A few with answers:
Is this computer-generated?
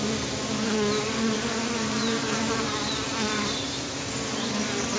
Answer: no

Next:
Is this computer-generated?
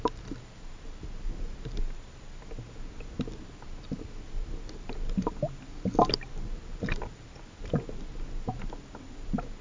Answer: no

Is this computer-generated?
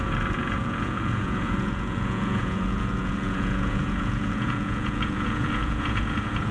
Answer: yes